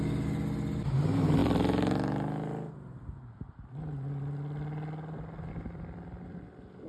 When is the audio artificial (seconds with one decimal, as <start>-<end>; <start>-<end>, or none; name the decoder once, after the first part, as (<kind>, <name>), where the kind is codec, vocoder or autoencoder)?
none